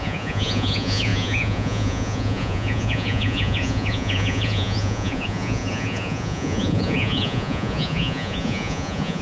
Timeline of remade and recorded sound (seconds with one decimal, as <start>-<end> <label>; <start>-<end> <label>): 0.0-9.2 remade